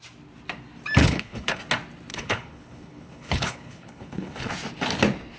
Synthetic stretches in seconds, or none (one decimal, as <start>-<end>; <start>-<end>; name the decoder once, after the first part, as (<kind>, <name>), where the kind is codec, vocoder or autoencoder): 1.0-1.6 (codec, HILCodec); 2.1-4.5